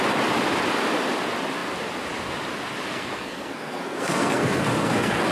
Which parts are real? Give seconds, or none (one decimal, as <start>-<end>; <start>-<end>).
0.0-2.9

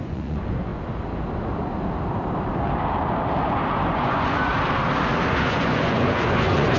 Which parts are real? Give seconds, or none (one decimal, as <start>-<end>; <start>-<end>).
0.7-3.9; 4.5-5.3